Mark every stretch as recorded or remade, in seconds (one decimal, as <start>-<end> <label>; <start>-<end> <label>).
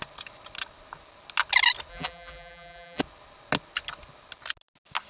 0.0-1.9 recorded; 1.9-3.0 remade; 3.0-5.1 recorded